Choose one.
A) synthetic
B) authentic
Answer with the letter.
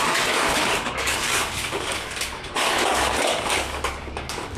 A